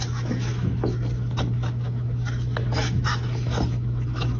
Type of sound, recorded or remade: remade